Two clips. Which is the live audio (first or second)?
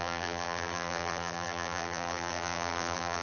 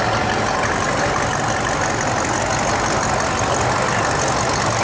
second